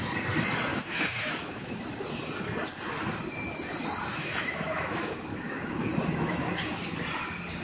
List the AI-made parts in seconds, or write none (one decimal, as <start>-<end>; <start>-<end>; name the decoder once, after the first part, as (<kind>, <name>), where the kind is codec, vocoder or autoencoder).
0.7-1.8 (autoencoder, DAC-VAE); 4.1-6.5